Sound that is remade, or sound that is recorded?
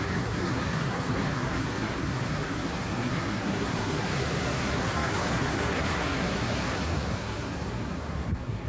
remade